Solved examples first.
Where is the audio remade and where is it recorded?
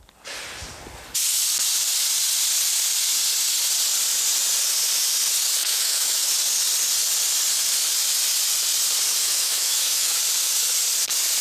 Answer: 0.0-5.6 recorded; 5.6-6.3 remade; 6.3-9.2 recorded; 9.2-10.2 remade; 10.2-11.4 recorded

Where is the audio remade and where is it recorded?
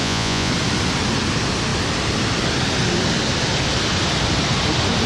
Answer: 0.0-0.5 remade; 0.5-5.1 recorded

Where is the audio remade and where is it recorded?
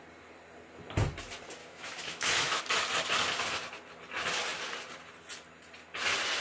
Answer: 0.0-1.6 recorded; 1.6-2.6 remade; 2.6-6.4 recorded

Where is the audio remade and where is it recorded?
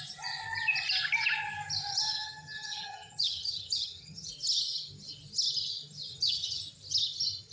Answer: 0.0-1.9 recorded; 1.9-4.3 remade; 4.3-6.1 recorded; 6.1-6.6 remade; 6.6-7.5 recorded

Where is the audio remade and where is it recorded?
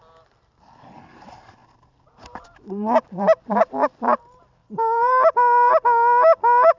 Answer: 0.0-1.6 recorded; 1.6-3.7 remade; 3.7-4.6 recorded; 4.6-5.7 remade; 5.7-6.8 recorded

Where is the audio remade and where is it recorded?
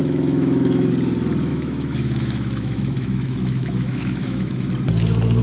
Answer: 0.0-0.9 remade; 0.9-1.5 recorded; 1.5-4.7 remade; 4.7-5.4 recorded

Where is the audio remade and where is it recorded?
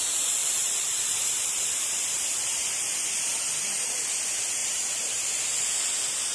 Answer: 0.0-0.4 recorded; 0.4-2.7 remade; 2.7-4.6 recorded; 4.6-5.4 remade; 5.4-6.3 recorded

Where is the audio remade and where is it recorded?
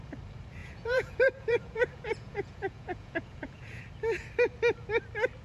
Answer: 0.0-0.6 recorded; 0.6-3.8 remade; 3.8-5.4 recorded